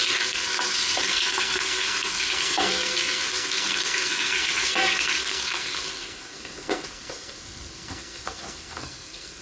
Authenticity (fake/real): fake